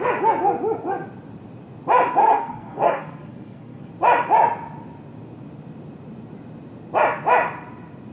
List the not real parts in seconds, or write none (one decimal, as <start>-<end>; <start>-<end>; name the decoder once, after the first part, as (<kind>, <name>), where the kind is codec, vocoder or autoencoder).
2.2-3.9 (codec, SNAC)